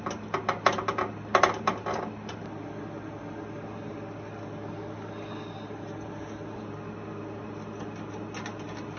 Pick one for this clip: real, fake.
real